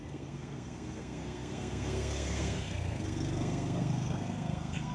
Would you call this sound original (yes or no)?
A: no